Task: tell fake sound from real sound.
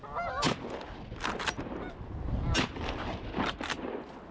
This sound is real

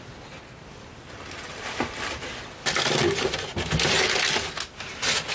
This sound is real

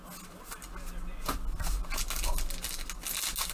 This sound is real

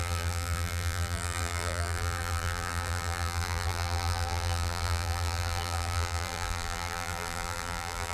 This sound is fake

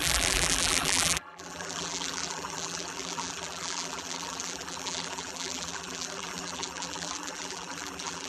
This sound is fake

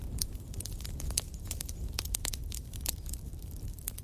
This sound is fake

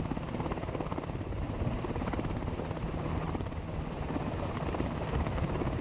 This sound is fake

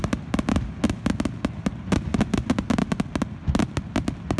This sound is real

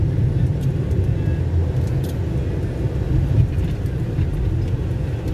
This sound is real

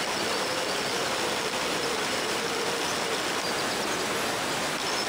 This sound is real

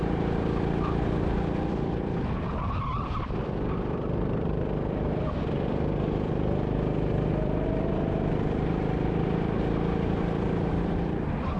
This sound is fake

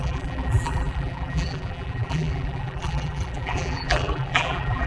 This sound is fake